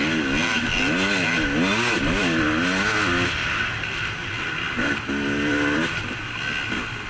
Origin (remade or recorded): recorded